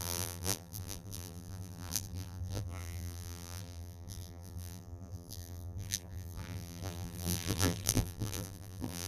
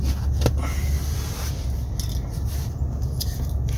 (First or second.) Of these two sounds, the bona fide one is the second